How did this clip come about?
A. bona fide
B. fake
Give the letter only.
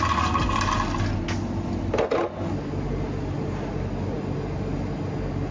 A